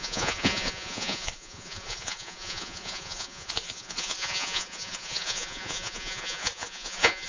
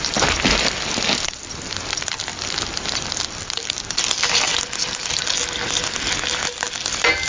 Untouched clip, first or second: second